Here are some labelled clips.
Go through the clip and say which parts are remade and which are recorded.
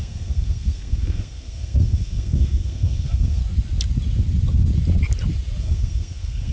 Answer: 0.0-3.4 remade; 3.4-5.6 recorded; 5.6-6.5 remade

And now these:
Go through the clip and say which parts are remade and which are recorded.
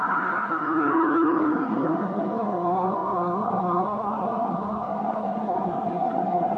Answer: 0.0-6.6 remade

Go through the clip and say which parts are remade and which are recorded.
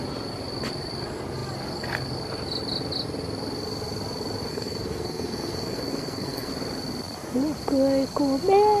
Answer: 0.0-4.5 recorded; 4.5-6.5 remade; 6.5-8.8 recorded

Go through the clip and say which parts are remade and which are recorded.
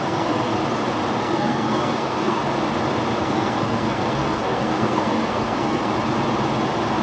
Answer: 0.0-0.6 remade; 0.6-1.2 recorded; 1.2-2.4 remade; 2.4-3.2 recorded; 3.2-5.9 remade; 5.9-7.0 recorded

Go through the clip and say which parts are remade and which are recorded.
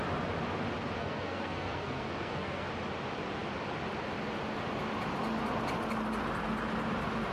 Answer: 0.0-1.0 recorded; 1.0-2.7 remade; 2.7-7.3 recorded